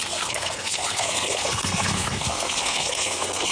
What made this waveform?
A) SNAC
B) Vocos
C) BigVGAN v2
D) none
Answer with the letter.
A